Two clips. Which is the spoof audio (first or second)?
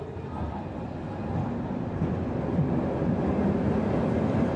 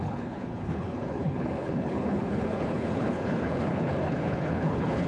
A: second